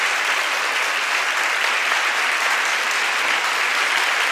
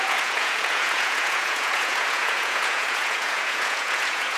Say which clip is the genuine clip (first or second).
first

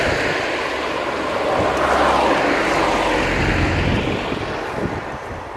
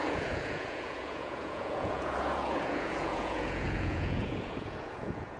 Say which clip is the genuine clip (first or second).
first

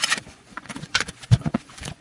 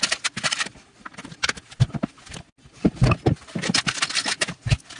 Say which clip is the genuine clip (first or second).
second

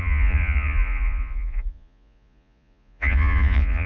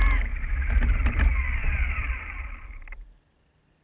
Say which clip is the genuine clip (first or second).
second